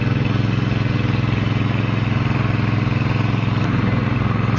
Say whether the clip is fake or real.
real